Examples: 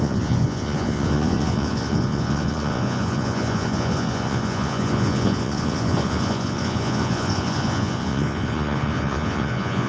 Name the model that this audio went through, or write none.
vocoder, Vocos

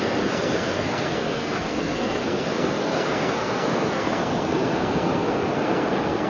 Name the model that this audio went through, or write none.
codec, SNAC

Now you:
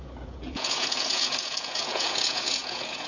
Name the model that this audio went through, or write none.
vocoder, Vocos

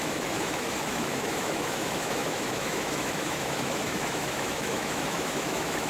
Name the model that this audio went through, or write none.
autoencoder, DAC-VAE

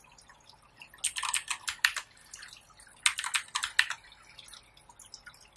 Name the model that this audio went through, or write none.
none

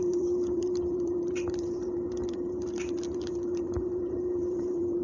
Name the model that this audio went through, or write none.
vocoder, BigVGAN v2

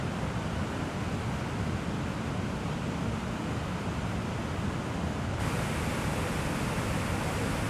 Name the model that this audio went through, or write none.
none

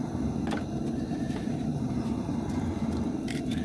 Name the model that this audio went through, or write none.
vocoder, BigVGAN v2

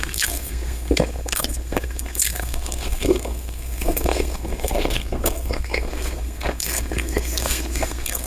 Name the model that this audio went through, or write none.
codec, SNAC